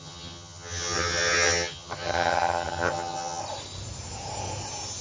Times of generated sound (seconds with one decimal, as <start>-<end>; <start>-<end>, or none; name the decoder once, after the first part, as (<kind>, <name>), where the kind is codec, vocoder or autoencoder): 0.0-3.4 (vocoder, HiFi-GAN)